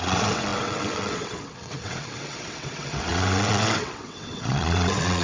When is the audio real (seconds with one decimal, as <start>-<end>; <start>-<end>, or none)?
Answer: none